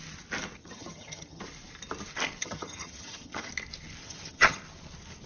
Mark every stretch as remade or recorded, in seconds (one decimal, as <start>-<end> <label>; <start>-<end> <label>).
0.0-0.6 recorded; 0.6-1.4 remade; 1.4-2.4 recorded; 2.4-3.5 remade; 3.5-4.0 recorded; 4.0-4.6 remade; 4.6-5.3 recorded